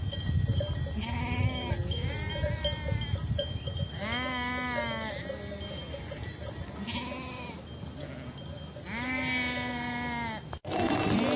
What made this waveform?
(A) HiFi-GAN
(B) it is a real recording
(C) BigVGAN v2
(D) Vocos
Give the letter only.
B